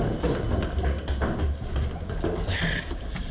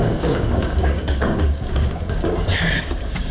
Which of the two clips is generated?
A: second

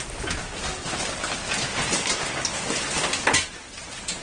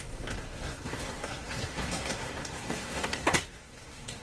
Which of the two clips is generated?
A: second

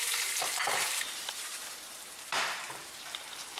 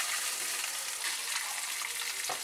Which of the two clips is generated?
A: first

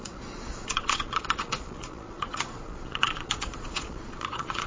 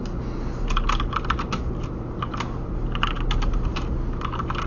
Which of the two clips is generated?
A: first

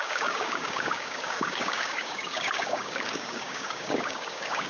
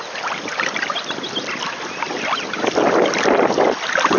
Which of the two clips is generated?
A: first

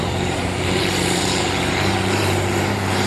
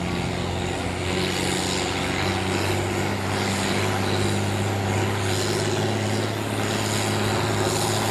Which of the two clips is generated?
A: first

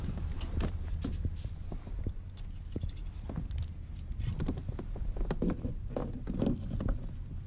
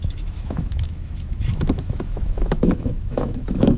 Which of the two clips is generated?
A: second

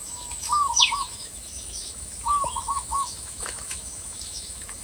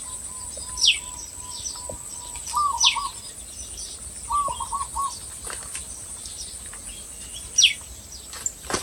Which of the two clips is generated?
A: first